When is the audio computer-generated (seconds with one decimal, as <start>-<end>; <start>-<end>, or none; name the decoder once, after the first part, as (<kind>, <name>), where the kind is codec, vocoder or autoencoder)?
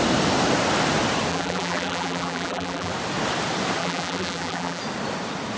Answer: 1.3-2.9 (vocoder, BigVGAN v2); 3.8-4.8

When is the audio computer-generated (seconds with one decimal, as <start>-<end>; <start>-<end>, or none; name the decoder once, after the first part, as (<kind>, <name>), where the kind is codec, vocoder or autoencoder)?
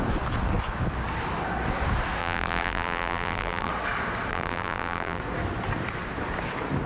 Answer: 2.2-3.7 (vocoder, BigVGAN v2); 4.3-5.2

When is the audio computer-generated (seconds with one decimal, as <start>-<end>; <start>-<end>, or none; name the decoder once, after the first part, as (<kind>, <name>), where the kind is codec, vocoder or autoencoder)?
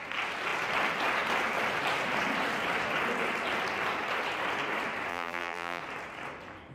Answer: 5.1-5.8 (vocoder, BigVGAN v2)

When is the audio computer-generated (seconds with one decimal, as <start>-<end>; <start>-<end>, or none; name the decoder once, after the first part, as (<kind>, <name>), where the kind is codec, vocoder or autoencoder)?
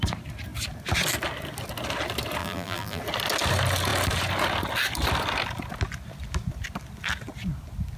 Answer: 2.4-3.0 (vocoder, BigVGAN v2)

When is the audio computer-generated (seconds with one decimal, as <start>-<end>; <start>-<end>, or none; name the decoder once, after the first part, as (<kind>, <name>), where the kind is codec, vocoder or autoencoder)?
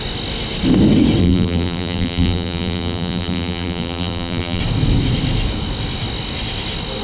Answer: 1.2-4.6 (vocoder, BigVGAN v2)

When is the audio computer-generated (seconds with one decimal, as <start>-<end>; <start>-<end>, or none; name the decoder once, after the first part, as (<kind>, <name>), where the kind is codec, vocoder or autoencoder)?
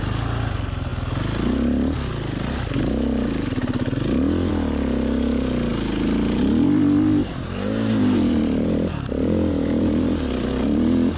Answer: 7.3-10.1 (vocoder, BigVGAN v2)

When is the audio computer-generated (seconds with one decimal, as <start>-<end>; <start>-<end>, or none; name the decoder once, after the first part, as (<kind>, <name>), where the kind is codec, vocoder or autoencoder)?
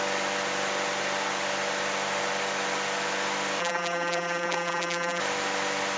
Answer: 3.6-5.2 (vocoder, BigVGAN v2)